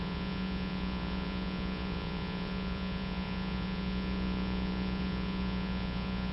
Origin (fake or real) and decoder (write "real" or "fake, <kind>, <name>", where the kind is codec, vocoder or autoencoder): fake, vocoder, Vocos